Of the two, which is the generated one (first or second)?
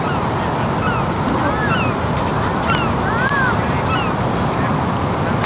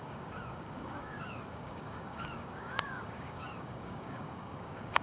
second